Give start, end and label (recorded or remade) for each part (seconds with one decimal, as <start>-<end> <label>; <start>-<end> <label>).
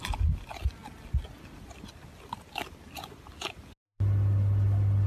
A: 0.0-5.1 recorded